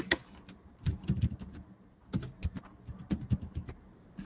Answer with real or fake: real